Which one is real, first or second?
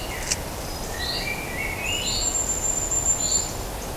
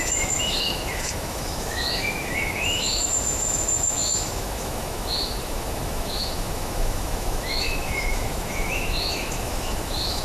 first